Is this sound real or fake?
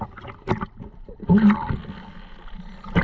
real